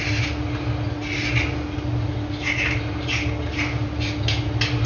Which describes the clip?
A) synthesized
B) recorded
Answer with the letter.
B